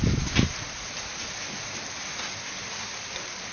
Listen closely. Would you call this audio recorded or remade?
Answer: recorded